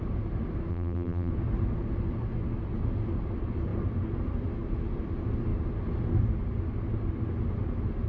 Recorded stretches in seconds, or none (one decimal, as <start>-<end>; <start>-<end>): 0.0-0.7; 1.3-8.1